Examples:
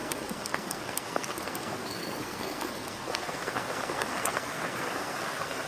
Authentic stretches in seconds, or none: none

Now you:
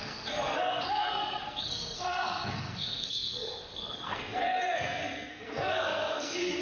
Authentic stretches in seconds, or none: none

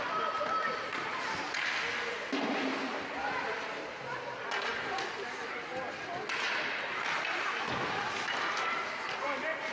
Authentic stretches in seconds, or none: 0.0-9.7

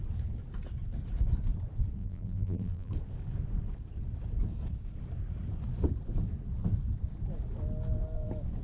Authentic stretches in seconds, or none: 0.0-2.0; 2.9-8.6

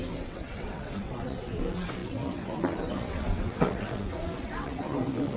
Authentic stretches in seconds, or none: none